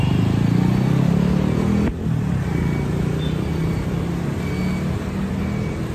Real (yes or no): yes